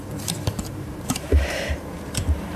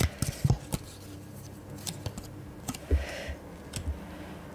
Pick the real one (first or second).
second